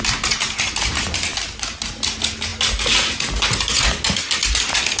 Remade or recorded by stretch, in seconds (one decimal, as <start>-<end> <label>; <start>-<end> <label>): 0.0-5.0 recorded